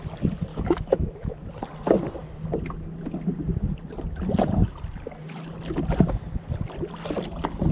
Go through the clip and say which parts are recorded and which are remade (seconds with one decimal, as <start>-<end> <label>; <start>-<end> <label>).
0.0-0.5 recorded; 0.5-1.4 remade; 1.4-7.7 recorded